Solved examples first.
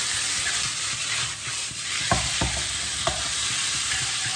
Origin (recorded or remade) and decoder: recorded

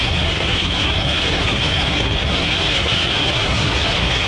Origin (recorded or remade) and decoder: remade, codec, SNAC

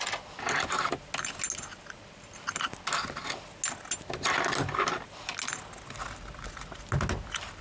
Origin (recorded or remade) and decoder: recorded